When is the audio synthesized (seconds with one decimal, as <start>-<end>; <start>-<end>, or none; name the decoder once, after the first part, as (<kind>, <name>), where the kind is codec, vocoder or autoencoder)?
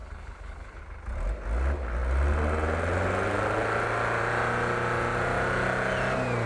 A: 0.0-0.8 (codec, HILCodec)